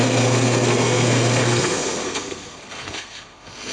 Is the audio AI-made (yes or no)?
yes